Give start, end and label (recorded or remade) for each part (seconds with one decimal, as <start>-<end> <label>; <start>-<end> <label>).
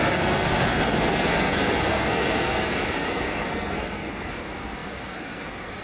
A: 0.0-5.8 remade